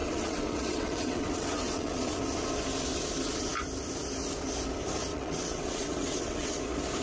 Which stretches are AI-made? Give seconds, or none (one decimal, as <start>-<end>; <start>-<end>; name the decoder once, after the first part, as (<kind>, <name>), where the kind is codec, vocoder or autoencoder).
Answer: 0.0-2.2 (vocoder, WaveNeXt); 5.1-6.6